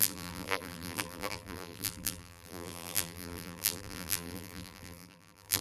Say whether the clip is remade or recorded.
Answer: remade